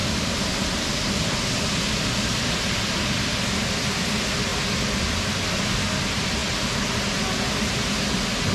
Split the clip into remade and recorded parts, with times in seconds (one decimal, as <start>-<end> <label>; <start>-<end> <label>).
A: 0.0-3.5 remade; 3.5-4.5 recorded; 4.5-5.1 remade; 5.1-8.5 recorded

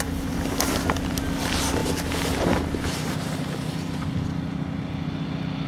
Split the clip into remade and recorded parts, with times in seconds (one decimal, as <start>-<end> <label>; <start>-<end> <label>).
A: 0.0-1.8 recorded; 1.8-3.9 remade; 3.9-5.7 recorded

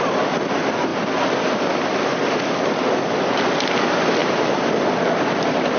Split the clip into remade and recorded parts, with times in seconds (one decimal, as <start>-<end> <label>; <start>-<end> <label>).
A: 0.0-5.8 recorded

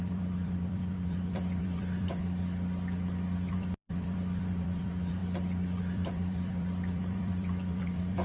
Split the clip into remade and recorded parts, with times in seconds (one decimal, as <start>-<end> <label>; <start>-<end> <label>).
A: 0.0-2.2 remade; 2.2-3.5 recorded; 3.5-5.2 remade; 5.2-5.8 recorded; 5.8-8.2 remade

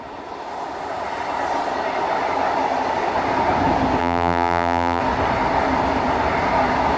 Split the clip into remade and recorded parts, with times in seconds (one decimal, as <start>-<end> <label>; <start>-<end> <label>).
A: 0.0-4.0 recorded; 4.0-5.0 remade; 5.0-7.0 recorded

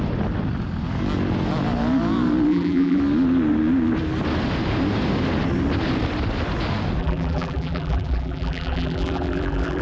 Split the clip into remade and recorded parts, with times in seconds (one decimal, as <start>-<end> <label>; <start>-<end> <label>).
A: 0.0-2.5 recorded; 2.5-3.0 remade; 3.0-7.0 recorded; 7.0-9.8 remade